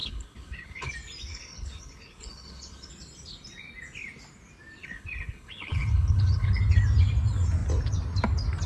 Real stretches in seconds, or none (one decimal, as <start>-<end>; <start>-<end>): 0.9-1.3; 2.9-4.8; 6.6-8.7